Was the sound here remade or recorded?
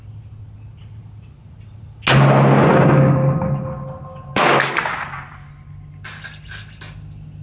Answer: recorded